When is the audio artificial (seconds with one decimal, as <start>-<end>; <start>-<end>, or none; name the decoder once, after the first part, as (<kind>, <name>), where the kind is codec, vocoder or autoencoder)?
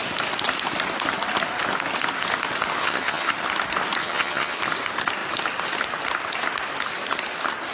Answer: 2.8-3.3 (vocoder, HiFi-GAN); 4.0-4.6